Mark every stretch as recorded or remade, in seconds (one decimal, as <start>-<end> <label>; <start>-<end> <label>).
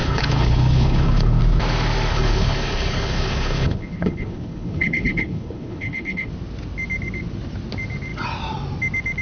0.0-1.4 remade; 1.4-2.1 recorded; 2.1-6.3 remade; 6.3-9.2 recorded